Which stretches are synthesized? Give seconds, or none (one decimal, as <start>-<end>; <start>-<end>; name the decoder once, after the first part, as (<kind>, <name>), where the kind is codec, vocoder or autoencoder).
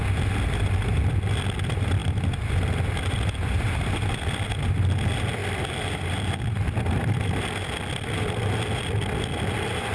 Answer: none